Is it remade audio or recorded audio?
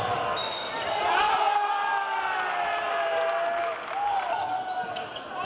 recorded